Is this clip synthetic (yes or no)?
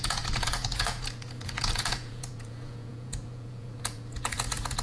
yes